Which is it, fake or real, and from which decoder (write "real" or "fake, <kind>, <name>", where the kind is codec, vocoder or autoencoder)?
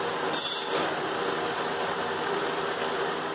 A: real